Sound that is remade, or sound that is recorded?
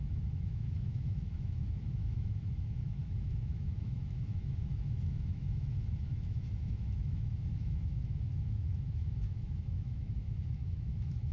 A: remade